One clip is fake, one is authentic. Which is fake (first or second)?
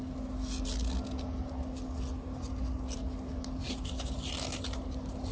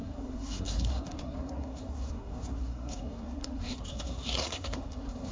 second